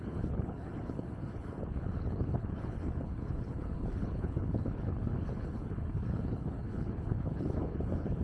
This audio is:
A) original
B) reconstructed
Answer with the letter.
B